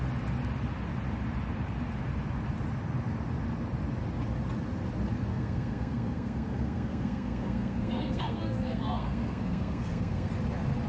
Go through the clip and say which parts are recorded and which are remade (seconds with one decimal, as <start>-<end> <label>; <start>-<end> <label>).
0.0-5.3 recorded; 5.3-10.3 remade; 10.3-10.9 recorded